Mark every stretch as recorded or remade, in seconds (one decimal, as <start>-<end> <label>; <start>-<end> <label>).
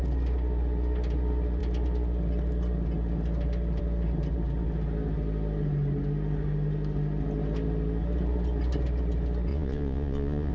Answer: 0.0-9.5 recorded; 9.5-10.5 remade